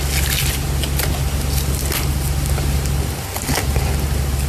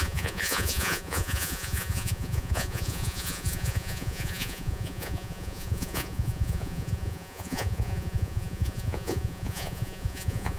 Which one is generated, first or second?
second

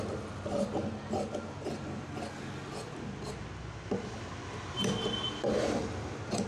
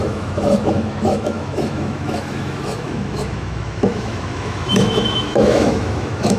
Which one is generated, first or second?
second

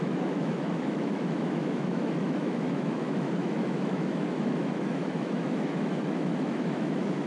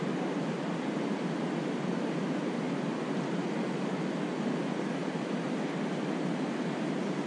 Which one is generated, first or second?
first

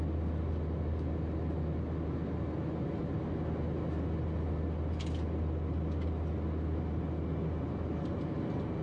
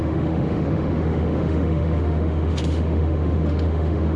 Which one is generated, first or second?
second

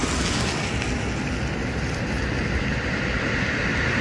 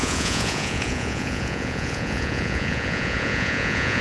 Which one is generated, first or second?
second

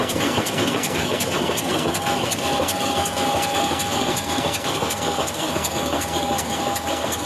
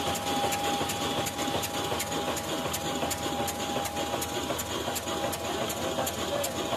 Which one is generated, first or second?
first